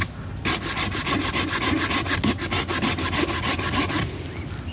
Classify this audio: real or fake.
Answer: real